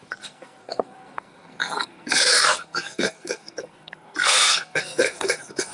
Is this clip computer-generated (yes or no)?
yes